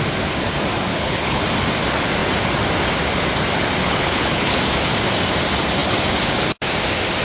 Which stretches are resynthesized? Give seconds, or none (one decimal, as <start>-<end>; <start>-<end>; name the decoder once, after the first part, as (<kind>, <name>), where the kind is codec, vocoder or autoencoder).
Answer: 0.9-1.4 (codec, HILCodec); 3.8-4.6